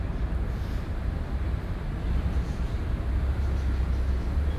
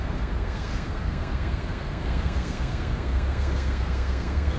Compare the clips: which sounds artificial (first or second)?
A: second